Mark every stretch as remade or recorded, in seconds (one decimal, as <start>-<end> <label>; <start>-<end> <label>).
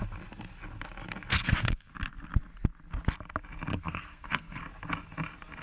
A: 0.0-1.3 recorded; 1.3-1.9 remade; 1.9-3.7 recorded; 3.7-4.6 remade; 4.6-5.6 recorded